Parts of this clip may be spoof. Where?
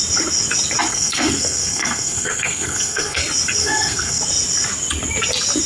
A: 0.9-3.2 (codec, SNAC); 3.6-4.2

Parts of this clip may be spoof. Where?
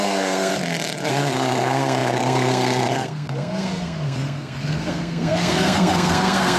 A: 0.0-0.5 (codec, SNAC); 1.1-6.6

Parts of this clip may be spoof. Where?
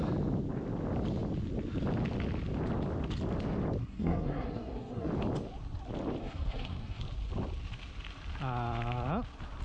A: 3.8-5.1 (codec, SNAC); 6.2-7.0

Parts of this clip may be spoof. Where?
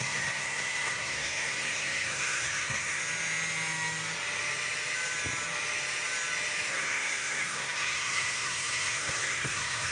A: 0.0-3.0 (codec, SNAC); 6.7-9.9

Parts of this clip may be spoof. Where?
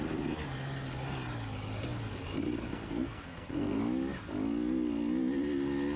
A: 2.7-3.8 (codec, SNAC)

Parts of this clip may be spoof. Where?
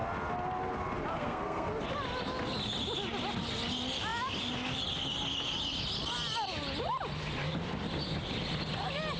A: 1.1-1.7 (codec, SNAC)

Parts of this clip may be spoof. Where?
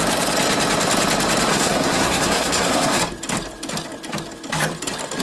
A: 1.5-3.0 (codec, SNAC)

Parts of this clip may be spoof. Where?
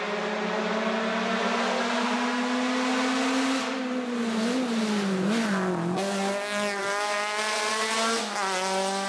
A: none